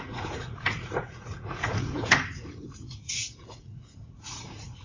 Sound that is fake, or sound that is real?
fake